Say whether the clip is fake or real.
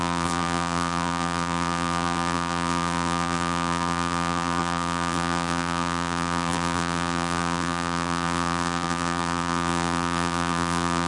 fake